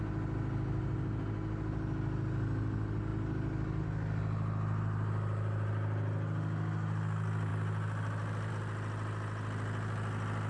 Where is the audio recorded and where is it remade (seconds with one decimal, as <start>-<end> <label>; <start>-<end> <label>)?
0.0-7.5 recorded; 7.5-8.5 remade; 8.5-10.5 recorded